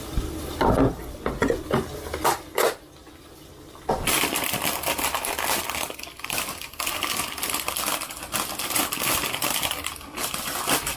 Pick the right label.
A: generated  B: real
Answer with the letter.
B